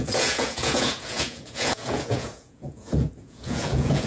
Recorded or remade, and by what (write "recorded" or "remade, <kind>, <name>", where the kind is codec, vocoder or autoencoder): remade, vocoder, Vocos